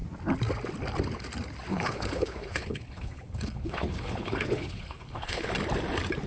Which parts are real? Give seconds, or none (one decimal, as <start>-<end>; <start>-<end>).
0.0-1.7; 5.5-6.3